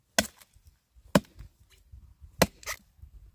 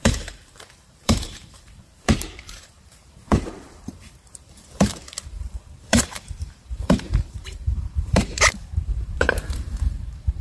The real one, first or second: first